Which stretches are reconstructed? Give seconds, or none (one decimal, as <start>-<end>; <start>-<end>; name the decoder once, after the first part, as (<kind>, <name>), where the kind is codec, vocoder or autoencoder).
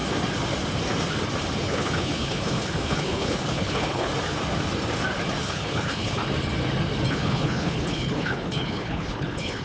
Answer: 1.6-4.1 (codec, HILCodec); 5.4-6.2; 7.1-9.6